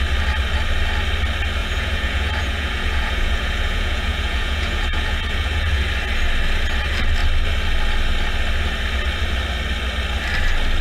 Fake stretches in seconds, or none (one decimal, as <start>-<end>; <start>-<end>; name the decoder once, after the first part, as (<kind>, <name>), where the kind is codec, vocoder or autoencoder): 1.6-5.8 (vocoder, Vocos)